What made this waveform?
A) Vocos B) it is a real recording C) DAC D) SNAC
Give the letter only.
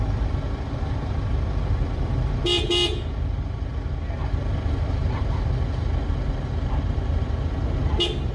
B